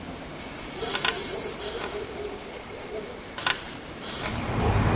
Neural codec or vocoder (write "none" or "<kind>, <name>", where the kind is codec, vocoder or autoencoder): none